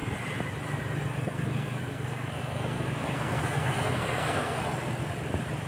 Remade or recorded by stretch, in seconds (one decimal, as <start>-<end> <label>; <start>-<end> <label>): 0.0-1.2 recorded; 1.2-4.6 remade; 4.6-5.7 recorded

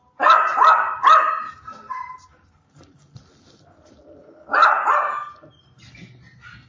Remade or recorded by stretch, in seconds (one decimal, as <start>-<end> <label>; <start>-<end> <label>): 0.0-6.7 recorded

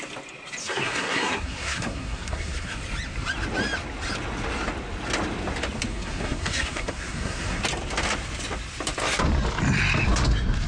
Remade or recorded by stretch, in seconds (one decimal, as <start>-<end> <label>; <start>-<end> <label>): 0.0-0.6 recorded; 0.6-2.8 remade; 2.8-5.9 recorded; 5.9-7.6 remade; 7.6-10.7 recorded

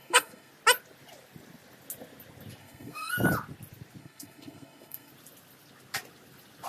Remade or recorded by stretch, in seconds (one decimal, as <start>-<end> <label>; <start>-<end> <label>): 0.0-0.5 remade; 0.5-2.6 recorded; 2.6-3.1 remade; 3.1-4.0 recorded; 4.0-5.1 remade; 5.1-6.7 recorded

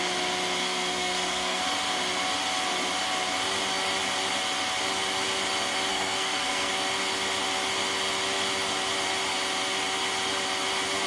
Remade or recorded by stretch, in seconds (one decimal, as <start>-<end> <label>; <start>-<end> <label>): 0.0-0.6 recorded; 0.6-1.6 remade; 1.6-5.9 recorded; 5.9-6.7 remade; 6.7-11.1 recorded

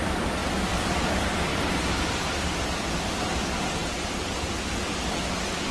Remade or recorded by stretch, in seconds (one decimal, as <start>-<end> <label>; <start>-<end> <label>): 0.0-5.7 recorded